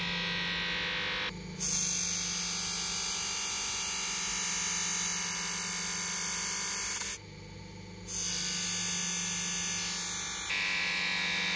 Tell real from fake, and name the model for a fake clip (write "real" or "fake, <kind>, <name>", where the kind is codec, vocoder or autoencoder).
real